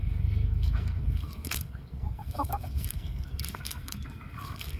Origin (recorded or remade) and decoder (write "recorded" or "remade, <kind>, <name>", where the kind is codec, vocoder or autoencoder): remade, codec, SNAC